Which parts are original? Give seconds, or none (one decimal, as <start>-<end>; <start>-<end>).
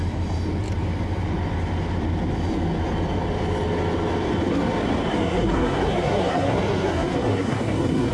0.0-5.1